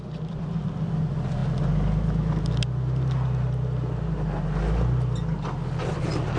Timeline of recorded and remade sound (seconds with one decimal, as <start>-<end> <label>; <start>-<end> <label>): 0.0-6.4 recorded